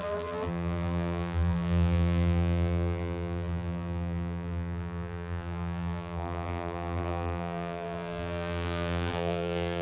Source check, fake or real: fake